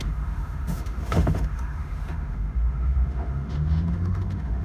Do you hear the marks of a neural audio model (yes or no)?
yes